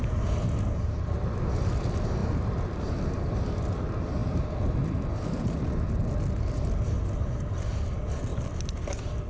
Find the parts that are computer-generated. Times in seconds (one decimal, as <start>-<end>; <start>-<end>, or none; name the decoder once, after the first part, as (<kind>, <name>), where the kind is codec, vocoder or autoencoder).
none